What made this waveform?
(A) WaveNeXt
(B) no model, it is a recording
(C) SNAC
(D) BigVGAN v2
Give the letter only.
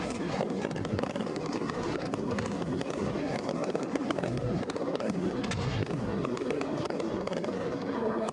C